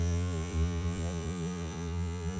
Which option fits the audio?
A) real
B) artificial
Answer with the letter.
B